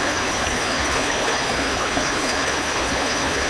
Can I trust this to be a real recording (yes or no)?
no